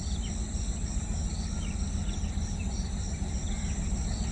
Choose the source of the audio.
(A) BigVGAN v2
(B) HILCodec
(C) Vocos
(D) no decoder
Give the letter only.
D